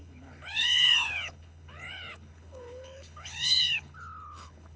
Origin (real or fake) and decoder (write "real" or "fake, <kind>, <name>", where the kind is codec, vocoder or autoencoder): fake, codec, HILCodec